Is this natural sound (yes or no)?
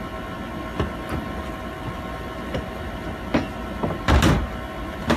yes